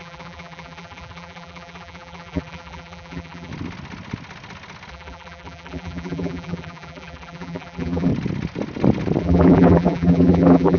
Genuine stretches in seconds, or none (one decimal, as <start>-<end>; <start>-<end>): 3.5-4.9; 8.1-9.2